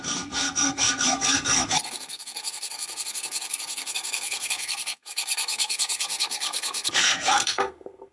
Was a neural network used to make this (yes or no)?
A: yes